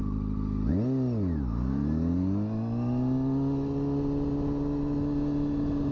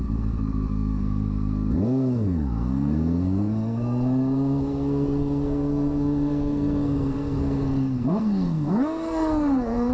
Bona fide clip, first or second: first